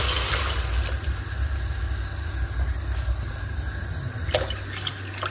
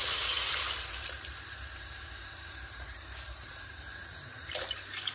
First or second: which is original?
first